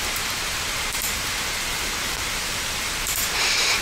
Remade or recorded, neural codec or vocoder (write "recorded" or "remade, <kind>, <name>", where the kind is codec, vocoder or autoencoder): remade, vocoder, BigVGAN v2